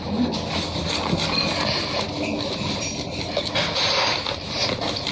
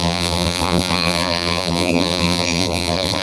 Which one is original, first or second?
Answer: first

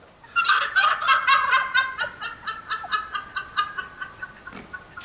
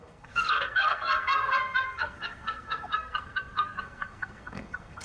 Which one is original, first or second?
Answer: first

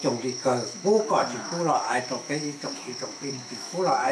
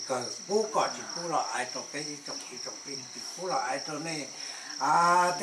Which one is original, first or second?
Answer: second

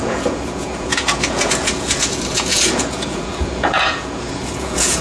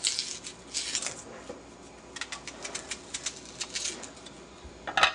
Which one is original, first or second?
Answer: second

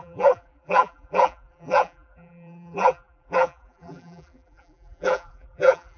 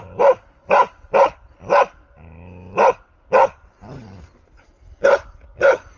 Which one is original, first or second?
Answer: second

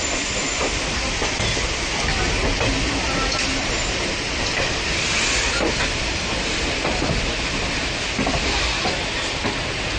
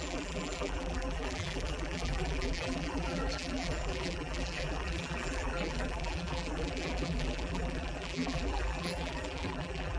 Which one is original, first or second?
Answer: first